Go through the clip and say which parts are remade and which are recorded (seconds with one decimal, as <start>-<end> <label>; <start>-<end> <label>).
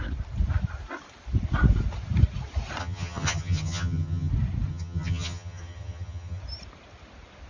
0.0-2.8 recorded; 2.8-4.3 remade; 4.3-4.7 recorded; 4.7-6.4 remade; 6.4-7.5 recorded